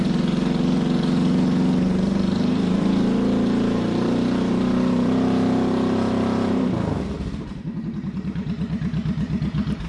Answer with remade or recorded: remade